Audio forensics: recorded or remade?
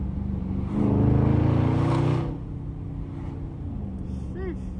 recorded